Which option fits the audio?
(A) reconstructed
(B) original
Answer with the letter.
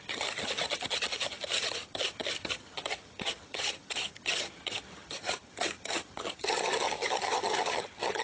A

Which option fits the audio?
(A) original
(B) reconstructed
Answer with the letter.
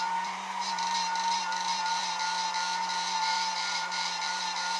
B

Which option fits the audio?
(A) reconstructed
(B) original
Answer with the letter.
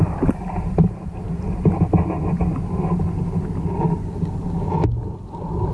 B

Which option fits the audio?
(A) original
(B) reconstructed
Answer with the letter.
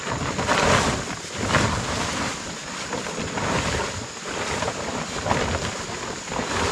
A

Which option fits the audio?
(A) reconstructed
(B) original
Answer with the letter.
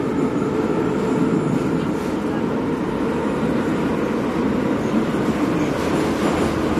B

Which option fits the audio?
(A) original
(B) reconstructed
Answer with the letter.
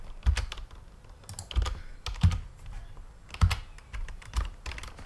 A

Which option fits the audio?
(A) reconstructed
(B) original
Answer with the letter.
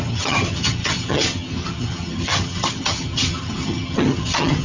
A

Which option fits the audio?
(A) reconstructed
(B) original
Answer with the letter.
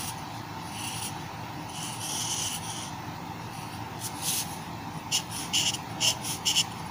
B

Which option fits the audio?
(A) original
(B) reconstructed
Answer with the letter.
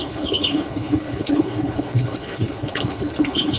B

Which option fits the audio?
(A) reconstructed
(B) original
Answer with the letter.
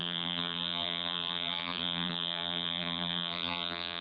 A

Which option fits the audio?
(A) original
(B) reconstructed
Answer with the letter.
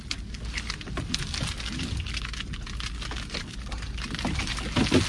A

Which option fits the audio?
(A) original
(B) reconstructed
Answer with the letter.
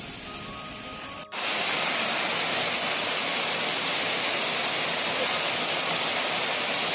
A